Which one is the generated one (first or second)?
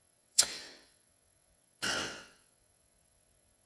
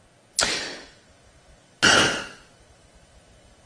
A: first